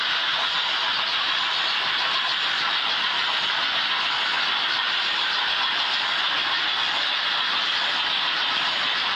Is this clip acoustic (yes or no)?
yes